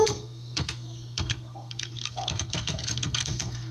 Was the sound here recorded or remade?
remade